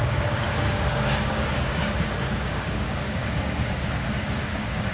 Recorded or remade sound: remade